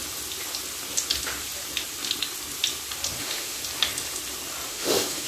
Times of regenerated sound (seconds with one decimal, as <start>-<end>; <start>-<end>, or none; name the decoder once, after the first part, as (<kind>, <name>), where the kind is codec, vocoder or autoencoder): 3.2-3.6 (autoencoder, DAC-VAE); 4.7-5.3